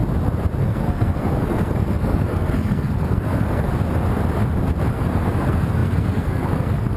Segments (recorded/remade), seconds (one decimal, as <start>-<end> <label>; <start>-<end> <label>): 0.0-0.6 recorded; 0.6-3.7 remade; 3.7-4.9 recorded; 4.9-7.0 remade